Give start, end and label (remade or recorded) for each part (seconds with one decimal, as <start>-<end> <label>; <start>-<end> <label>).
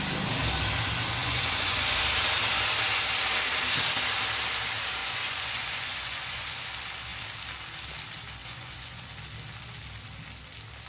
0.0-1.2 recorded; 1.2-2.0 remade; 2.0-5.0 recorded; 5.0-6.6 remade; 6.6-8.4 recorded; 8.4-9.1 remade; 9.1-10.9 recorded